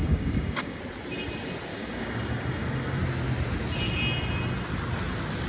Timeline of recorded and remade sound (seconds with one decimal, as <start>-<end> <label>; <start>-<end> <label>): 0.0-0.8 remade; 0.8-1.7 recorded; 1.7-3.0 remade; 3.0-5.5 recorded